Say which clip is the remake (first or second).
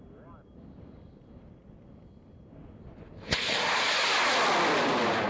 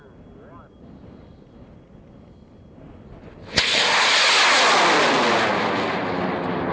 first